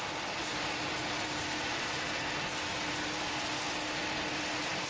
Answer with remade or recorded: recorded